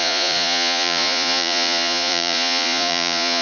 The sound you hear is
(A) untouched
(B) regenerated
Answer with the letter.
B